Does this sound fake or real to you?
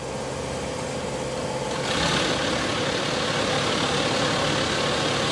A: real